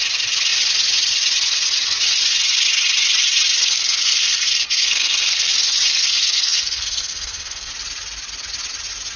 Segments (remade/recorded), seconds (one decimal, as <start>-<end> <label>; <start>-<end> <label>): 0.0-3.6 recorded; 3.6-5.5 remade; 5.5-5.9 recorded; 5.9-7.7 remade; 7.7-9.2 recorded